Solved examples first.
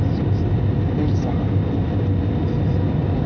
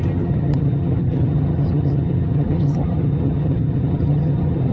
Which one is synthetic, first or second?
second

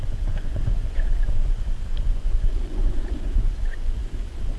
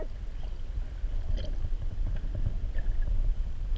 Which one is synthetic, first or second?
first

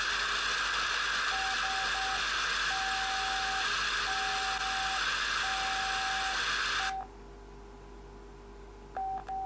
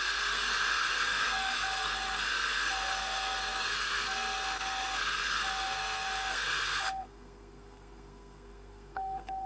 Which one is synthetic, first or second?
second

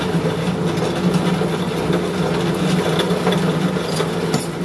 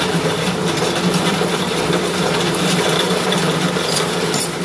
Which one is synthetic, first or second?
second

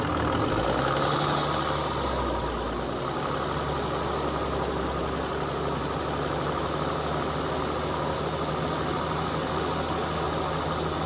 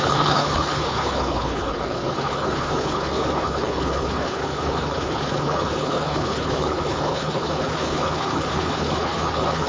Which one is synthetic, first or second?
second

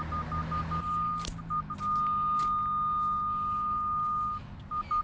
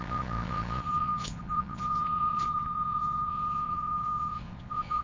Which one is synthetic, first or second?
second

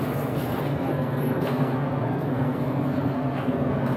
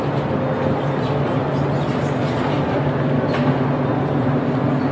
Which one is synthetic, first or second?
first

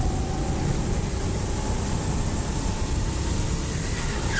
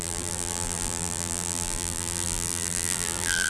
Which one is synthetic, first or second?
second